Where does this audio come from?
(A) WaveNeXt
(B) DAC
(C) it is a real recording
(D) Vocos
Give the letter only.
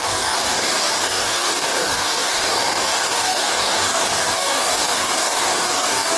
B